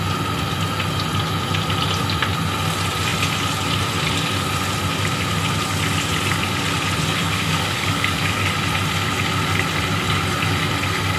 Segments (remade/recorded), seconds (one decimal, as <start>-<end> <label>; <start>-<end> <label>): 0.0-7.2 recorded; 7.2-8.4 remade; 8.4-11.2 recorded